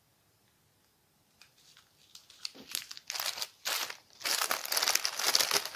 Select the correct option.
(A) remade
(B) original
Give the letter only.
B